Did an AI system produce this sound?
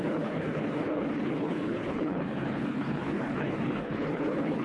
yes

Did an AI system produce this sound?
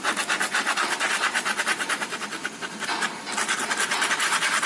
no